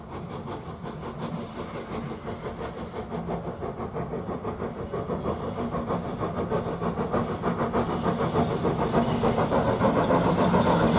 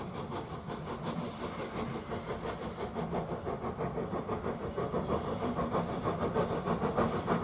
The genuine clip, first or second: first